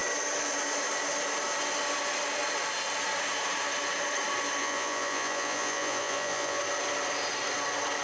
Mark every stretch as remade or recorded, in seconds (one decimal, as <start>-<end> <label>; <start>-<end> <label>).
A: 0.0-4.6 recorded; 4.6-6.6 remade; 6.6-8.0 recorded